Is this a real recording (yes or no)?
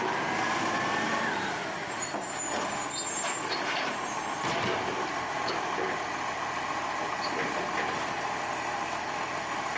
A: yes